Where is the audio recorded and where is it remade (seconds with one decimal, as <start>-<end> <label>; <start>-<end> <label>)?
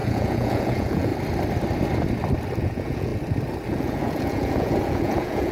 0.0-1.1 remade; 1.1-2.6 recorded; 2.6-3.1 remade; 3.1-3.7 recorded; 3.7-5.5 remade